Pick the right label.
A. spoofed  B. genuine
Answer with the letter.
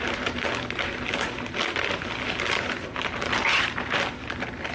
B